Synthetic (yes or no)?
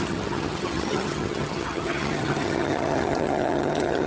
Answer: yes